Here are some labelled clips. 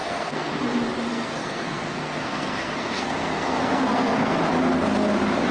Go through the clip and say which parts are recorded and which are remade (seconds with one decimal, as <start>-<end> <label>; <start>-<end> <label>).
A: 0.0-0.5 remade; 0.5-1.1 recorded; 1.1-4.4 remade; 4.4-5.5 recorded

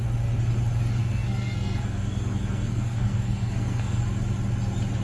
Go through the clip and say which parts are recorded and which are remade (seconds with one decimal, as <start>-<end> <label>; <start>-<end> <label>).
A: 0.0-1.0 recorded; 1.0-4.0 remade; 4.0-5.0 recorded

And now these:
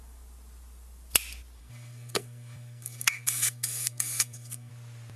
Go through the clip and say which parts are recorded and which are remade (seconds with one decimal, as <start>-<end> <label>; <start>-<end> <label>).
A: 0.0-1.6 recorded; 1.6-4.7 remade; 4.7-5.2 recorded

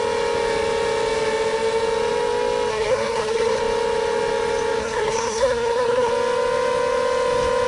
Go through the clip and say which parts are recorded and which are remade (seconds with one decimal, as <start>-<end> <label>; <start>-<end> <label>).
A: 0.0-2.7 recorded; 2.7-3.6 remade; 3.6-4.8 recorded; 4.8-6.1 remade; 6.1-7.7 recorded

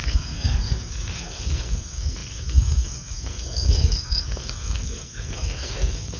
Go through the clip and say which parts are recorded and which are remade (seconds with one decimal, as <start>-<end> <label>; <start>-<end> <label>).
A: 0.0-6.2 remade

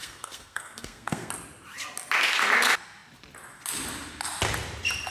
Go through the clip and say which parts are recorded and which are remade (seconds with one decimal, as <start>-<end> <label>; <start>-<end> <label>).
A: 0.0-1.3 remade; 1.3-5.1 recorded

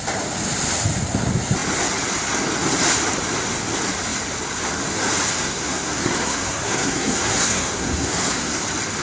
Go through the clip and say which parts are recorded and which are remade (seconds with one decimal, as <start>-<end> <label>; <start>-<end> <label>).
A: 0.0-5.3 recorded; 5.3-8.6 remade; 8.6-9.0 recorded

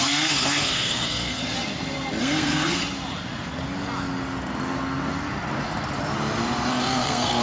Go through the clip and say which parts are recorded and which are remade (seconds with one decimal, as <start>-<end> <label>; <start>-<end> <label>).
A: 0.0-1.4 remade; 1.4-2.2 recorded; 2.2-2.8 remade; 2.8-6.7 recorded; 6.7-7.4 remade